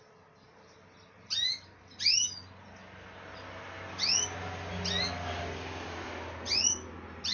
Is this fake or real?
real